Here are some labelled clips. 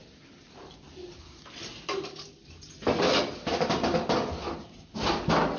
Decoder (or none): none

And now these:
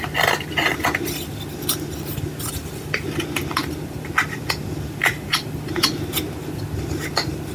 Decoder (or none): none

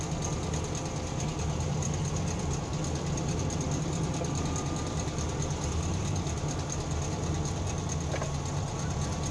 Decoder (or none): none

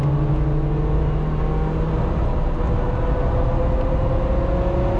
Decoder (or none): none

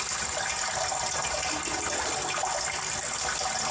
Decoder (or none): none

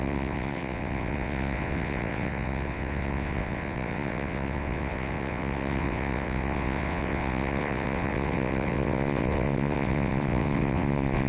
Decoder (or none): vocoder, WaveNeXt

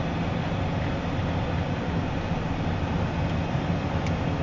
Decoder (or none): none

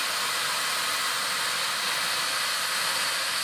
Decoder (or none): none